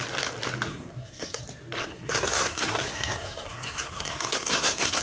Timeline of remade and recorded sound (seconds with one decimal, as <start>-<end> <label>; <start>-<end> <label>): 0.0-0.7 recorded; 0.7-1.4 remade; 1.4-1.8 recorded; 1.8-5.0 remade